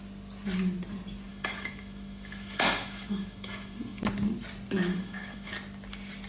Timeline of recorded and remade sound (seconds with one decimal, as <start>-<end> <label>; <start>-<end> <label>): 0.0-1.3 recorded; 1.3-4.0 remade; 4.0-4.9 recorded; 4.9-5.5 remade; 5.5-6.3 recorded